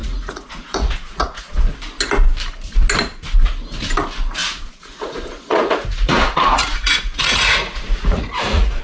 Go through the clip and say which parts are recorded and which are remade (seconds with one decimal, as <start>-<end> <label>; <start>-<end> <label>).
0.0-1.6 remade; 1.6-4.4 recorded; 4.4-8.8 remade